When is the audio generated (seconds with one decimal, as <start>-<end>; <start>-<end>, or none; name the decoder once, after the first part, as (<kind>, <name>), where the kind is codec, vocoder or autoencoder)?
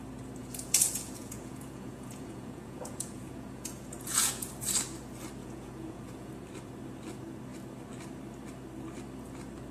0.4-4.5 (vocoder, Vocos); 5.4-6.3